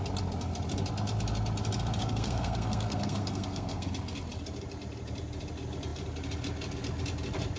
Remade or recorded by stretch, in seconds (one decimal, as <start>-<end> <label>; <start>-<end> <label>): 0.0-2.0 recorded; 2.0-3.9 remade; 3.9-7.6 recorded